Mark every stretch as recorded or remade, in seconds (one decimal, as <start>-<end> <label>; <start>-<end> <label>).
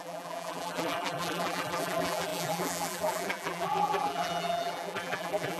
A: 0.0-5.6 remade